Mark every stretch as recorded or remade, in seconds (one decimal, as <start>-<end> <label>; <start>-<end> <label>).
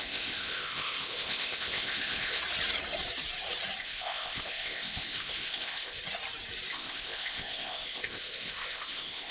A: 0.0-2.4 remade; 2.4-3.8 recorded; 3.8-6.0 remade; 6.0-6.7 recorded; 6.7-9.3 remade